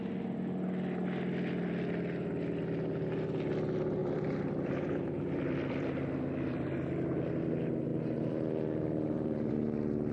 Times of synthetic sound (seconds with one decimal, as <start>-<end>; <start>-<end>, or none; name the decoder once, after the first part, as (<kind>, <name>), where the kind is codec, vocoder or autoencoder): 4.0-6.9 (vocoder, BigVGAN v2); 7.9-9.5